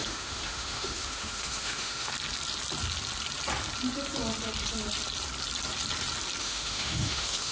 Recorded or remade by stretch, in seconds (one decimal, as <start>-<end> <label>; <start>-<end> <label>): 0.0-2.1 remade; 2.1-6.4 recorded; 6.4-7.5 remade